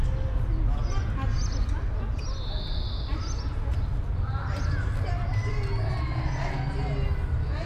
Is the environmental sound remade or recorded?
recorded